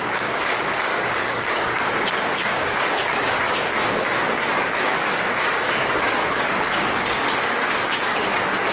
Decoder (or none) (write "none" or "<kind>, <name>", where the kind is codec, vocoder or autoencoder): codec, DAC